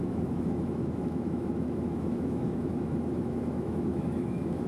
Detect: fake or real fake